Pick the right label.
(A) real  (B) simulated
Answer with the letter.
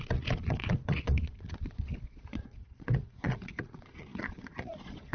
B